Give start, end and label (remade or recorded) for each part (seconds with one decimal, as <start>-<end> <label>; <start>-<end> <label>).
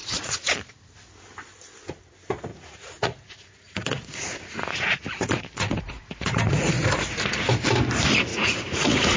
0.0-0.5 remade; 0.5-2.5 recorded; 2.5-6.7 remade; 6.7-8.3 recorded; 8.3-9.2 remade